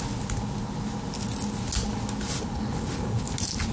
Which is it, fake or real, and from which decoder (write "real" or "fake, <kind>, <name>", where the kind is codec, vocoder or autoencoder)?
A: real